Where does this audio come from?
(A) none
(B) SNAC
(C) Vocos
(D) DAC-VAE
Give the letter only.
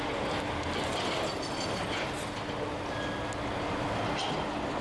A